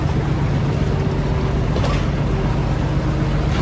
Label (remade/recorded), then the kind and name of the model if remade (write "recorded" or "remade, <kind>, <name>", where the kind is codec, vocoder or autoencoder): recorded